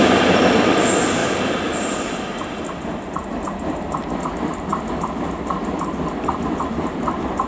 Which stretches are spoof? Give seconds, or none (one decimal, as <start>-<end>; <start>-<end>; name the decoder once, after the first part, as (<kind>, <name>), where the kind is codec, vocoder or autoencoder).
1.2-2.6 (vocoder, BigVGAN v2)